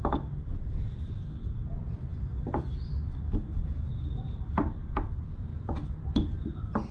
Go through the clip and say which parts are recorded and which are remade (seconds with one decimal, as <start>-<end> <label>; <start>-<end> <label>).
0.0-6.9 recorded